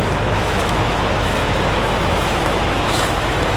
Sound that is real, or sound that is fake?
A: fake